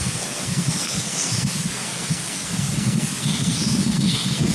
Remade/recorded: remade